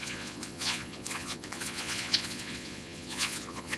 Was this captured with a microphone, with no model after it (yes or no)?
no